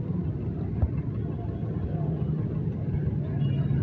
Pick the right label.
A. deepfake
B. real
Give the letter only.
B